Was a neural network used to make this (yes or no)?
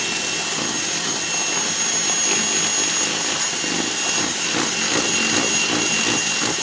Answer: no